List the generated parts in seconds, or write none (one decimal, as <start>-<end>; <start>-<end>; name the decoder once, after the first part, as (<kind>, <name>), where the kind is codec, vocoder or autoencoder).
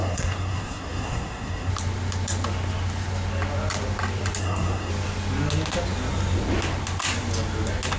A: 0.0-1.7 (codec, SNAC); 4.4-4.9